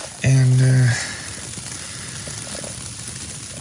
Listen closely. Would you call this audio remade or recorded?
recorded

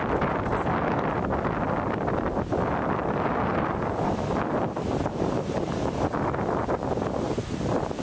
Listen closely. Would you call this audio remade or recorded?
recorded